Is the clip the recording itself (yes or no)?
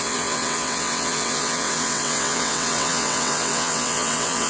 no